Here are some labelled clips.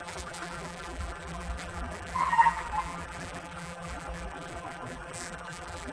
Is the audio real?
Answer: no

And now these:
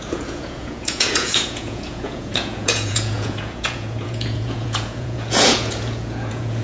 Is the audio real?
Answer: no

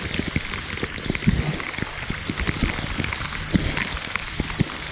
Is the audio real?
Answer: yes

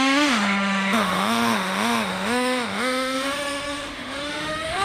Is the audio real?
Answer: no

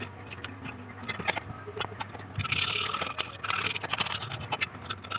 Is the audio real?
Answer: yes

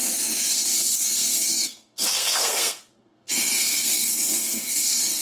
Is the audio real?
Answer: no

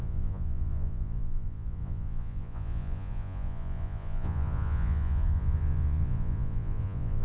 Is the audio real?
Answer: no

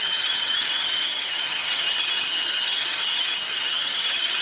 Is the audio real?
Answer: no